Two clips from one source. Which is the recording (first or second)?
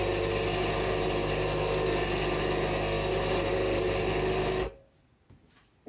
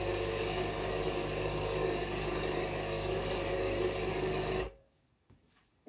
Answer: first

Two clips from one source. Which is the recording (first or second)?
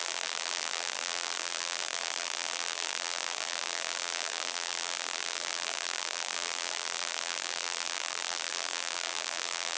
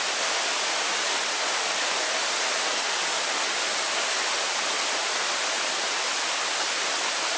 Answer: second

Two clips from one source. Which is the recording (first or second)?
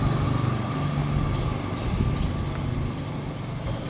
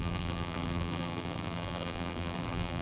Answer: first